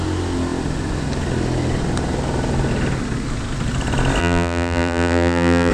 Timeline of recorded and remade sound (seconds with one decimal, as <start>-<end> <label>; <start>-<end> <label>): 0.0-4.2 recorded; 4.2-5.7 remade